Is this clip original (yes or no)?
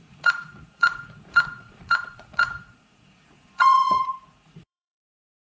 no